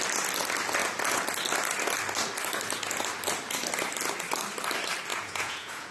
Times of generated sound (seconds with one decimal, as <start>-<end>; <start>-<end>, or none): 5.1-5.9